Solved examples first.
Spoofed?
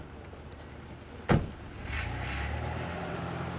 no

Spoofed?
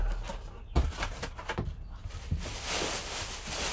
no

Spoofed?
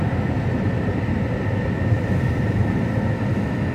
no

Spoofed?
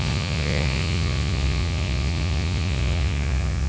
yes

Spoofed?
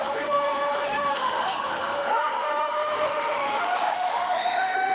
yes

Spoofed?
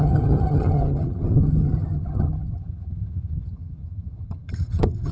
yes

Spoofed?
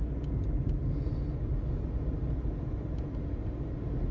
no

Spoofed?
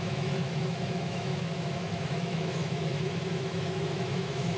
yes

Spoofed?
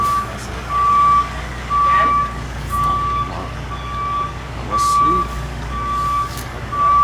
yes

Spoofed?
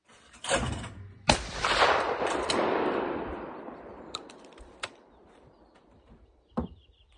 yes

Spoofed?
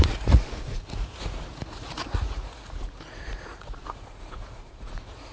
yes